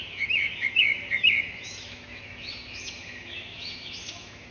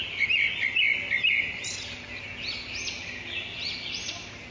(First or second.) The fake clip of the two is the first